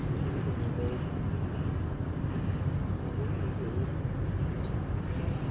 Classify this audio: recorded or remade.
recorded